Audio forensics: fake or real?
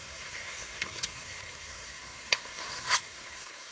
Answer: fake